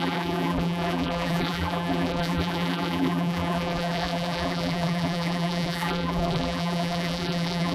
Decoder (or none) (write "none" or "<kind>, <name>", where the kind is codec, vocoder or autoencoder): vocoder, BigVGAN v2